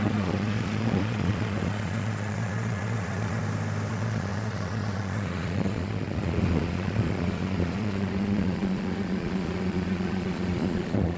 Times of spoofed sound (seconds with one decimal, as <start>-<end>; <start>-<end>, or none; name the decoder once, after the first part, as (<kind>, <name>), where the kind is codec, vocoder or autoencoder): 0.0-3.4 (vocoder, Vocos); 3.9-11.2